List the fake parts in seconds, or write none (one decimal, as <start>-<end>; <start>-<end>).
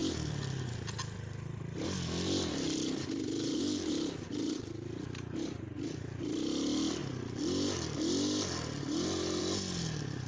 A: none